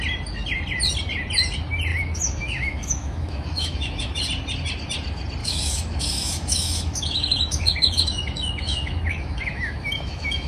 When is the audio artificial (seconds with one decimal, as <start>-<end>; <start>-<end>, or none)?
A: 1.9-4.2; 5.4-10.5